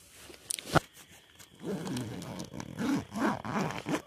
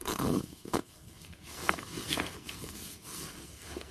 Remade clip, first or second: second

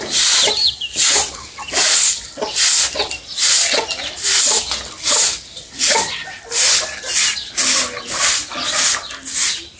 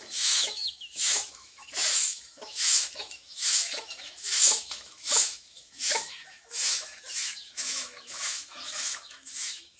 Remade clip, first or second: second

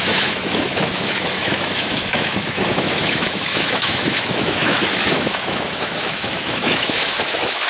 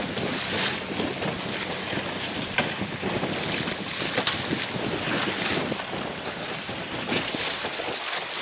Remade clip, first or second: first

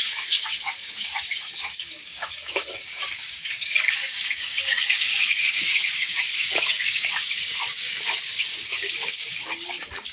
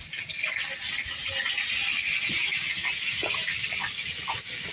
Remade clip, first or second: first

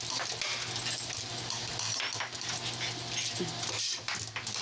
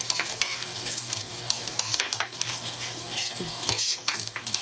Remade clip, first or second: second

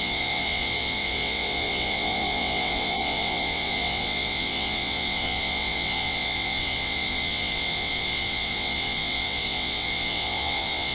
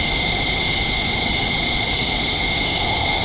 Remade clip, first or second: first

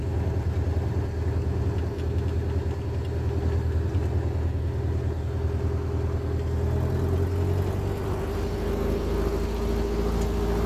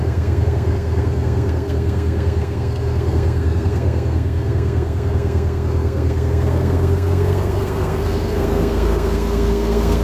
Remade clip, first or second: second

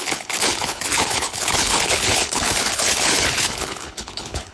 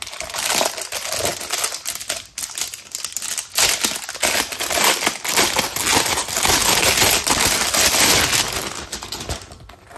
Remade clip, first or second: first